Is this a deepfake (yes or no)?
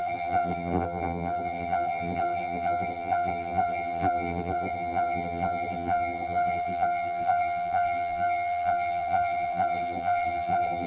yes